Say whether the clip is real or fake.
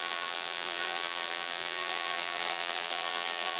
fake